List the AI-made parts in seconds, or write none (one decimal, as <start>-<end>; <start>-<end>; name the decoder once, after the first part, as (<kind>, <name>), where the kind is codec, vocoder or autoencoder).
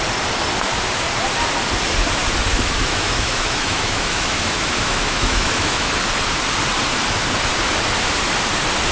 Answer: 2.5-5.9 (autoencoder, DAC-VAE)